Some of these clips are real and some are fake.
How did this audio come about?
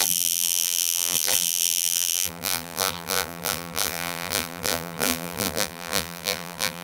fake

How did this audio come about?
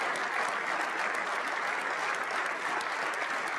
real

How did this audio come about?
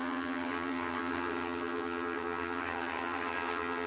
fake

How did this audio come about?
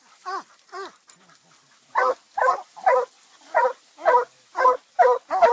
real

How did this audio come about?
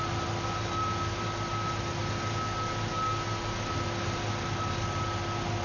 real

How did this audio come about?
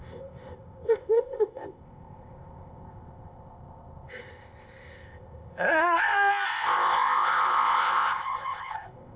fake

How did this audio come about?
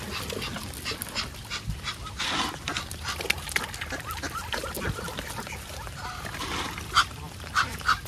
real